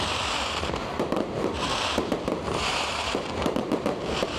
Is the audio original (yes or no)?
no